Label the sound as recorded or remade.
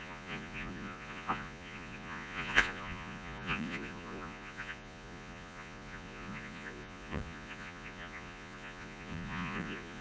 remade